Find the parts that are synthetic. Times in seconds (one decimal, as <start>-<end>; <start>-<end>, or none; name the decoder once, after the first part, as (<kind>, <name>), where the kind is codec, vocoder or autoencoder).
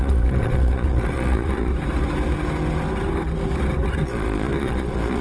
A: 0.0-1.7 (vocoder, Vocos); 4.0-5.2